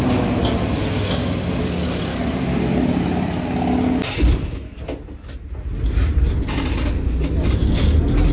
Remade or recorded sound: recorded